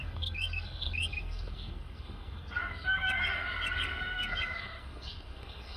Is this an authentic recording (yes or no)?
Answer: no